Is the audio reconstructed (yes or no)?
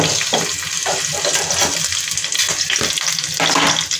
no